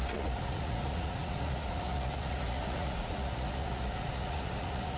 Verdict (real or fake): fake